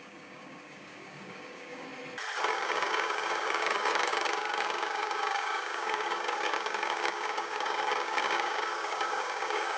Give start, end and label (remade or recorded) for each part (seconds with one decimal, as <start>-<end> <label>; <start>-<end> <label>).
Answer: 0.0-1.9 remade; 1.9-2.5 recorded; 2.5-9.8 remade